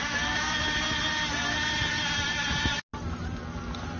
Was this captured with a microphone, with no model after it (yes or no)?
yes